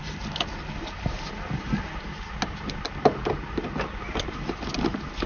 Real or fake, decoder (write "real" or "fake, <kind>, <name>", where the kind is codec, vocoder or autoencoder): real